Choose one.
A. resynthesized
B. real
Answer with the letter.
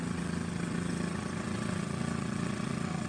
A